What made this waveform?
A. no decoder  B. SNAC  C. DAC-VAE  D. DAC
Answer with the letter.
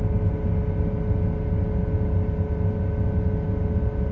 A